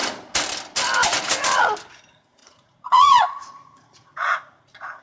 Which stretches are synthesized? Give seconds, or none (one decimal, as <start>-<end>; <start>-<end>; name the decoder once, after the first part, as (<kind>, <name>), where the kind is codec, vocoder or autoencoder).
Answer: 2.4-5.0 (vocoder, Vocos)